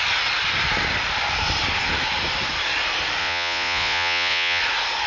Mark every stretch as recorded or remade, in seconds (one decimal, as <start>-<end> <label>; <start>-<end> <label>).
0.0-3.2 recorded; 3.2-4.6 remade; 4.6-5.1 recorded